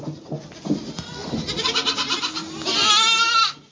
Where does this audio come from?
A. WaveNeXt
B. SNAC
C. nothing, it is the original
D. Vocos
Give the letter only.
C